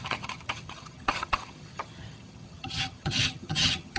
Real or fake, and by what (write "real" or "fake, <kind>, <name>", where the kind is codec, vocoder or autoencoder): fake, vocoder, HiFi-GAN